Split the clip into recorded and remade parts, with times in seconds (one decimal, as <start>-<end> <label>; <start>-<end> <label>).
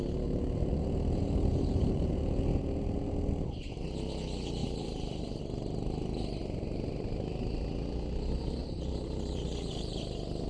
0.0-1.5 recorded; 1.5-2.4 remade; 2.4-4.6 recorded; 4.6-5.4 remade; 5.4-6.4 recorded; 6.4-7.6 remade; 7.6-8.6 recorded; 8.6-10.0 remade; 10.0-10.5 recorded